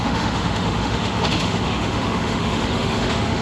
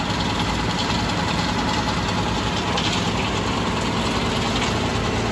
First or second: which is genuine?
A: second